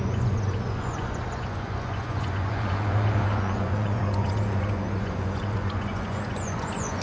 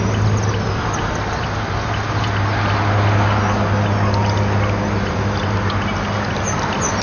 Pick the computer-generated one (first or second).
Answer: first